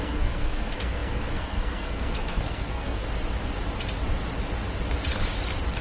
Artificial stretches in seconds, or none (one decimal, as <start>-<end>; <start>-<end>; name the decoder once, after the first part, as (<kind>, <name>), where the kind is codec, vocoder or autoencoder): 0.0-3.0 (codec, SNAC)